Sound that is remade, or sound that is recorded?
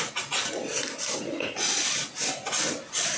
recorded